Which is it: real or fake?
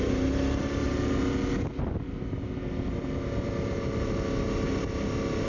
real